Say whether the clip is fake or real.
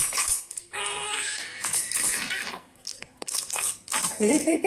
fake